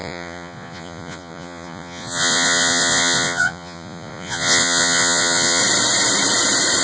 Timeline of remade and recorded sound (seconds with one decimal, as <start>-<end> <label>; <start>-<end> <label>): 0.0-5.6 remade; 5.6-6.8 recorded